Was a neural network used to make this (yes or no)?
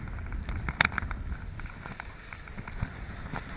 no